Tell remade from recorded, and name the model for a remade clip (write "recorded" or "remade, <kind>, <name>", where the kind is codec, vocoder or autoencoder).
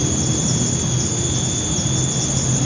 recorded